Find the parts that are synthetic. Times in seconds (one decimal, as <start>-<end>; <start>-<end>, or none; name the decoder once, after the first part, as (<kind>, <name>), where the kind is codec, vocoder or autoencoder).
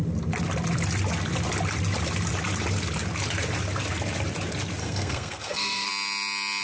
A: 4.8-5.9 (codec, SNAC)